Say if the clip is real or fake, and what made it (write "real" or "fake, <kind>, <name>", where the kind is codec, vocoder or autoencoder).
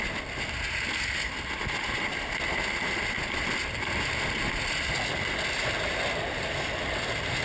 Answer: real